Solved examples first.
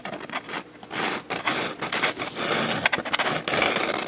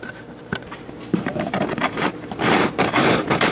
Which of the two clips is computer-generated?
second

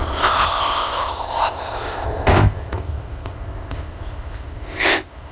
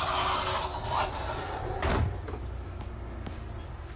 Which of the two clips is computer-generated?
first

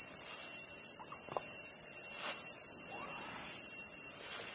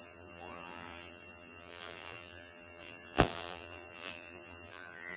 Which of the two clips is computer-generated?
second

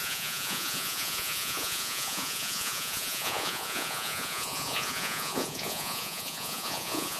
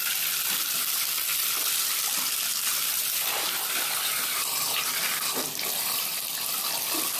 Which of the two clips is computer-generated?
first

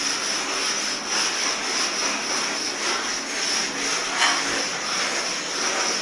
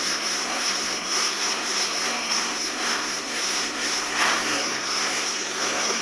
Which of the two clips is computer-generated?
second